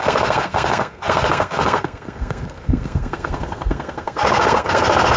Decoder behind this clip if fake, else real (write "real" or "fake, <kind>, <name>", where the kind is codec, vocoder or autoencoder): fake, codec, SNAC